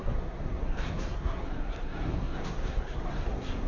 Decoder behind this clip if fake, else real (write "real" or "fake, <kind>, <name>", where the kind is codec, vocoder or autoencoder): fake, codec, SNAC